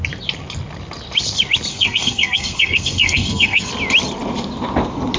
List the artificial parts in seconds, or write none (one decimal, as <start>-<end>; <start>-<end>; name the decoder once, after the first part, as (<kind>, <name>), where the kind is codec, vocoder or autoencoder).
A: 1.7-3.7 (codec, SNAC)